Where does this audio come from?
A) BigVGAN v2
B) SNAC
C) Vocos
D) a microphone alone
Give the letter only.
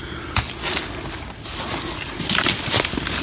D